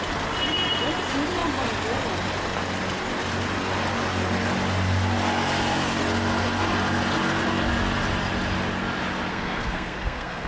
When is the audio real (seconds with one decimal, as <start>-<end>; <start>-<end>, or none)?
0.0-9.3